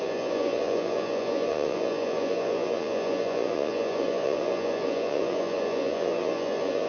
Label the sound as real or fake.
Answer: fake